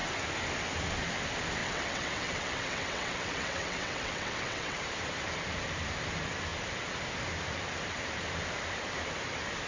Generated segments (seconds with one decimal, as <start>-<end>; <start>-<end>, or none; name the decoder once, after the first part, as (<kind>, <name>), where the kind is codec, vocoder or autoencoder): 1.6-4.8 (vocoder, WaveNeXt)